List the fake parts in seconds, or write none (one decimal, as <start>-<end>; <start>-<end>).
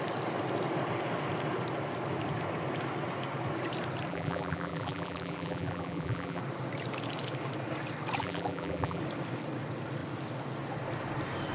4.1-6.4; 8.2-9.0